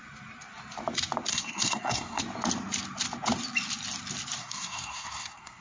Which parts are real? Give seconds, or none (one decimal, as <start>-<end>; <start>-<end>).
0.0-1.3; 2.2-4.4